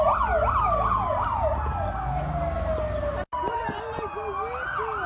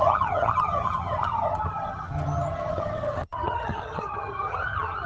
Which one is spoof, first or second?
second